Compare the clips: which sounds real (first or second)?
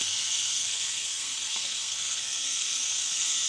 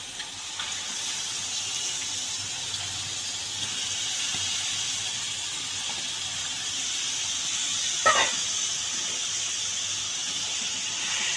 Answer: second